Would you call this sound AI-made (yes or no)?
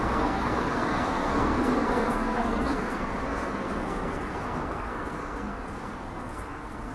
yes